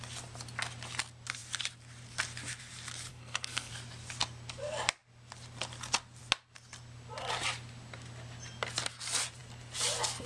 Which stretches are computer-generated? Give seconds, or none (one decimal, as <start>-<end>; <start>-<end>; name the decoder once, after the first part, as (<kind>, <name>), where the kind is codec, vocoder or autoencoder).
3.1-3.7 (codec, SNAC)